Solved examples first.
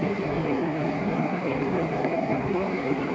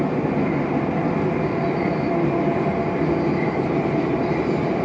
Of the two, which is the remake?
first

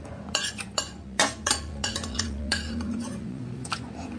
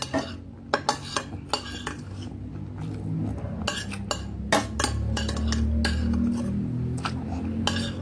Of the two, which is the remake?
first